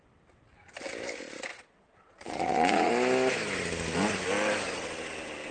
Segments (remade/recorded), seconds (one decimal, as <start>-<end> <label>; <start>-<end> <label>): 0.0-1.5 recorded; 1.5-2.9 remade; 2.9-5.5 recorded